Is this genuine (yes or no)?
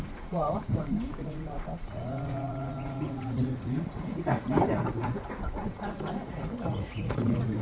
no